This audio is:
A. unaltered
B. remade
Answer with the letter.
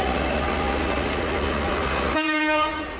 B